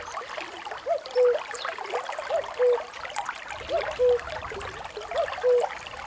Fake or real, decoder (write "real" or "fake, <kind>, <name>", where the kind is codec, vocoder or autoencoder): real